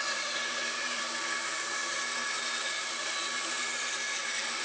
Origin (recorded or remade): remade